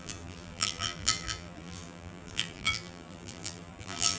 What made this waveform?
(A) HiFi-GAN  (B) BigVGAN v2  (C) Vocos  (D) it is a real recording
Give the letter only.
B